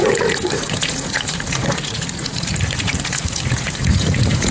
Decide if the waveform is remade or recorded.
remade